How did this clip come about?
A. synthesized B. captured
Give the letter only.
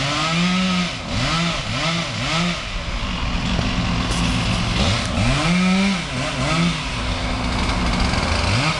B